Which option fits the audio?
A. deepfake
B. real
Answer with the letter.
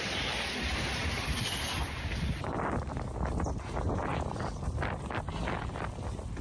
B